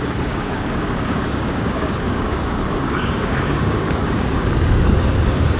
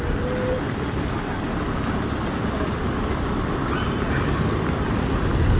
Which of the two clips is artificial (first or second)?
first